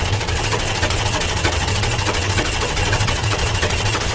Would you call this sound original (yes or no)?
no